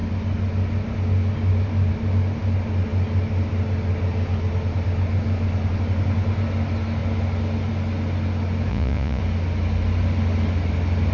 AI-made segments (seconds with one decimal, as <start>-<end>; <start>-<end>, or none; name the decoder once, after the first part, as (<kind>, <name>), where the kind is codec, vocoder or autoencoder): 8.7-9.2 (vocoder, Vocos)